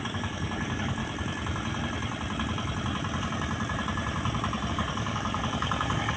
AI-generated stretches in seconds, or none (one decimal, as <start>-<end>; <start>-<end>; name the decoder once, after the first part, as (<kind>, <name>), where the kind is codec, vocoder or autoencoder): 0.0-1.0 (codec, DAC); 4.7-6.2